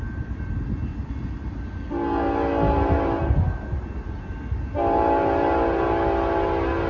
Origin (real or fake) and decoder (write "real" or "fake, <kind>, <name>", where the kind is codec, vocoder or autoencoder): real